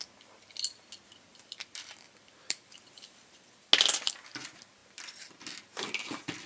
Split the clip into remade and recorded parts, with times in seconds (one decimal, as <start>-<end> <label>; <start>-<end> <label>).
0.0-1.3 recorded; 1.3-3.7 remade; 3.7-6.5 recorded